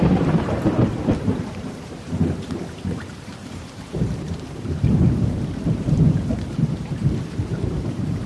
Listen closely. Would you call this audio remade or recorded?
remade